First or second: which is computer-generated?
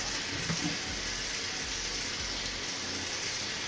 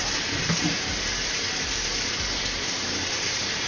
second